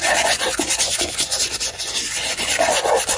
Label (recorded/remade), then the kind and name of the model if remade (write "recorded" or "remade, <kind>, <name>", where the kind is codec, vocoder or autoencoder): remade, vocoder, Vocos